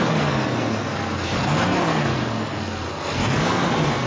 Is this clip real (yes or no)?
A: no